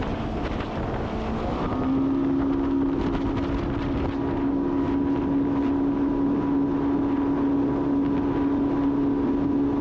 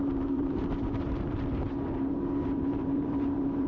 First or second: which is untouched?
first